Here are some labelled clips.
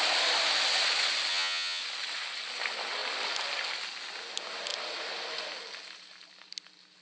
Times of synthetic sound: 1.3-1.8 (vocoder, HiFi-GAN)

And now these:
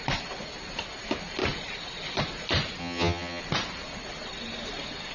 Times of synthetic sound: 2.8-3.4 (vocoder, HiFi-GAN)

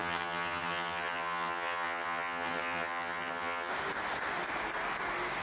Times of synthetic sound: 0.0-3.7 (vocoder, HiFi-GAN)

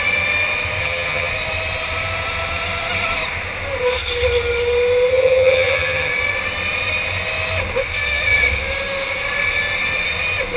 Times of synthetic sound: 0.8-1.3 (vocoder, HiFi-GAN); 5.1-6.1